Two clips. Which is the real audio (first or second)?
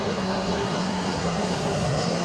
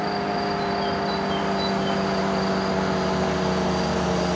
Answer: second